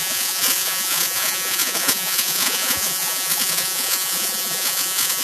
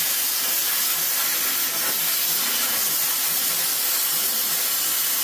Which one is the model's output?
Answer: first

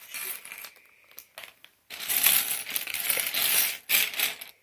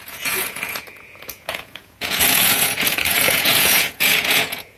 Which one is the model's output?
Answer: second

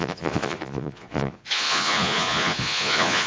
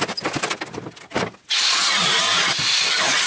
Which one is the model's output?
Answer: first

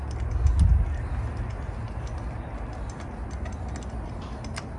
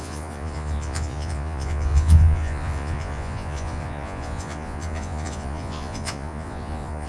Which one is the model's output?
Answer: second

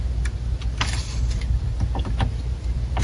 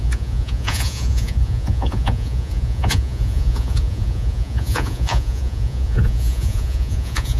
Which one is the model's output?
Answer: second